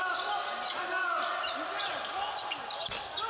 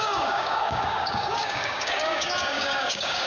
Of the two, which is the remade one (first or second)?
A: second